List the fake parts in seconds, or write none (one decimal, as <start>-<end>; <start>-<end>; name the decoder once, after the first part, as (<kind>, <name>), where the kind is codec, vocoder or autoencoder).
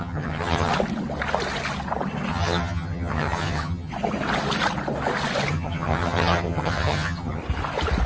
0.0-0.7 (vocoder, HiFi-GAN); 2.3-3.9; 5.5-7.4